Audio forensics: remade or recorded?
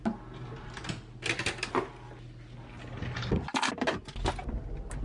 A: recorded